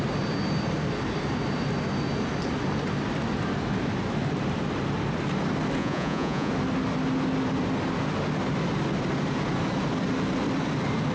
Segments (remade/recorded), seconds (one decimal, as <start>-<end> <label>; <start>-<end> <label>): 0.0-5.8 recorded; 5.8-6.5 remade; 6.5-11.1 recorded